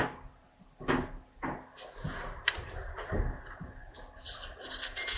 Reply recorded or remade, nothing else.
recorded